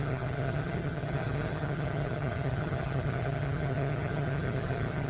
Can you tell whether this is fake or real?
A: fake